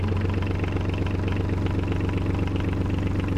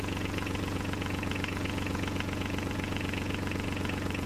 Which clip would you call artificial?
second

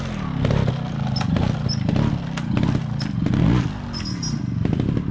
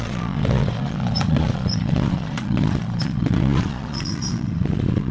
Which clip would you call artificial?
second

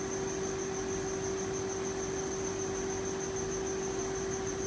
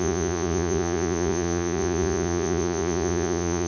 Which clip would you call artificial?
second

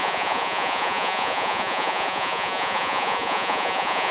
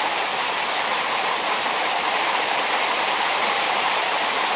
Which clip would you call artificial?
first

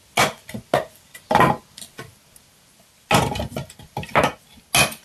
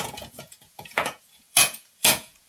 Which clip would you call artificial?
second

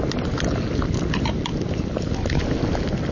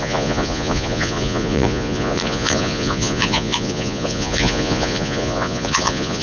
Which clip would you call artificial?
second